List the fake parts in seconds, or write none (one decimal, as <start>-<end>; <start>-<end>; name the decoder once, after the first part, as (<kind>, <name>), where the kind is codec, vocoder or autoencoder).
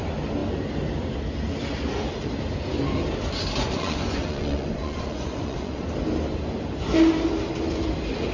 3.6-5.8 (vocoder, Vocos)